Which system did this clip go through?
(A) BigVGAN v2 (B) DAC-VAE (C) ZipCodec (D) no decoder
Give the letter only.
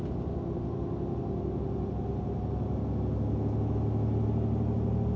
D